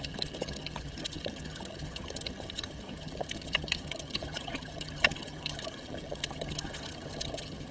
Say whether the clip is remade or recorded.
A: remade